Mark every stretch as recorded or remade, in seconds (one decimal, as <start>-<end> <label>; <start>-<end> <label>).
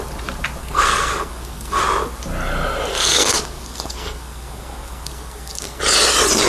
0.0-0.6 recorded; 0.6-1.8 remade; 1.8-2.9 recorded; 2.9-5.8 remade; 5.8-6.5 recorded